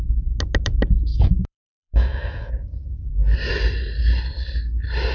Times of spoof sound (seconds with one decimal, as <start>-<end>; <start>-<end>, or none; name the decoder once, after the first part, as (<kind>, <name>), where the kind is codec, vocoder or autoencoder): 1.1-2.5 (autoencoder, DAC-VAE)

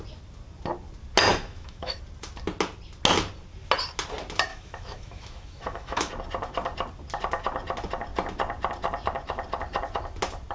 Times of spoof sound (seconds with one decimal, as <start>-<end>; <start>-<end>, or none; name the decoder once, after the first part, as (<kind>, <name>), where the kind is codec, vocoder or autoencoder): 1.3-2.0 (autoencoder, DAC-VAE); 4.5-6.1